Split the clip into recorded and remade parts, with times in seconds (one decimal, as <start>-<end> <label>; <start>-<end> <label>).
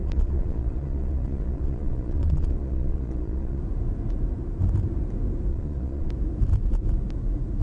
0.0-3.6 remade; 3.6-5.5 recorded; 5.5-6.1 remade; 6.1-7.6 recorded